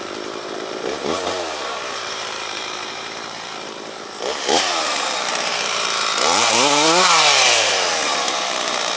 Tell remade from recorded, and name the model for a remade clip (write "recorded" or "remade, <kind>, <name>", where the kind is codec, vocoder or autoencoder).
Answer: remade, vocoder, BigVGAN v2